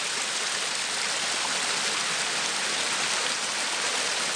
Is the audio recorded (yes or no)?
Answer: yes